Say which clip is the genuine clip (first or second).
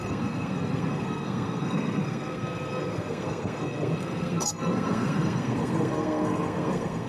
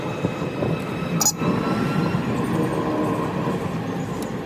second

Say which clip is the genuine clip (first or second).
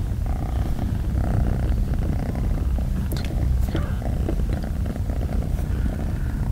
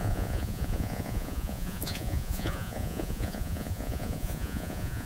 first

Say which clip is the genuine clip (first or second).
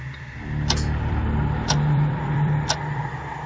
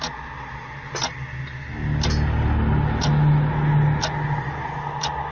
second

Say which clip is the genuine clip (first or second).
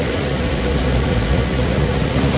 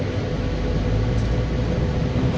second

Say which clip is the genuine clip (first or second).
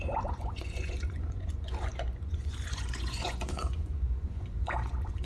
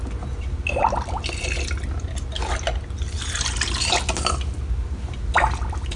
second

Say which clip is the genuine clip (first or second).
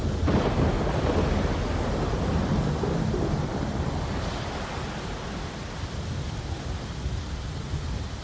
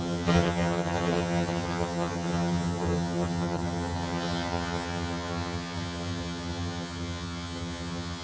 first